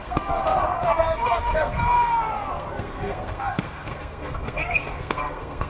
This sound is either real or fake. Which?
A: fake